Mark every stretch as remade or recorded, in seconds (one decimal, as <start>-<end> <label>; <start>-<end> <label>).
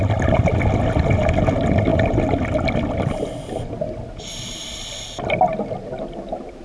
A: 0.0-6.6 recorded